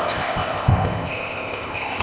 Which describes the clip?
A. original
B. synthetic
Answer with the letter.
B